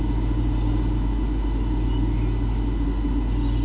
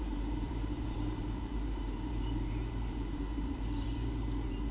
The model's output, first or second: second